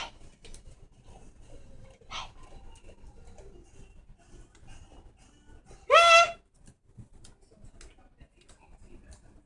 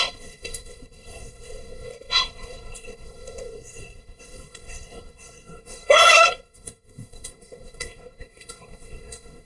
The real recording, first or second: first